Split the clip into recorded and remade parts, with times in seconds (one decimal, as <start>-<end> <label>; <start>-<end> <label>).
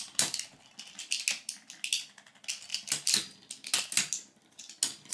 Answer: 0.0-5.1 recorded